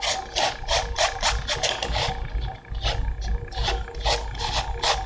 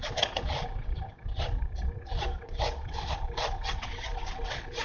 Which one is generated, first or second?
second